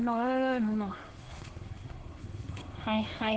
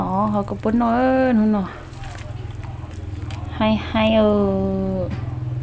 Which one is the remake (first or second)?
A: first